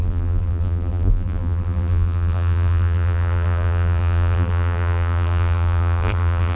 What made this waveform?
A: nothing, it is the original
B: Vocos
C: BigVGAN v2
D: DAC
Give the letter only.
C